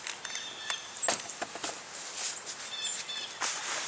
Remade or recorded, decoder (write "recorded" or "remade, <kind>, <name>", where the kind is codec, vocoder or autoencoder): recorded